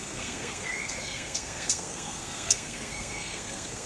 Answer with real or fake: fake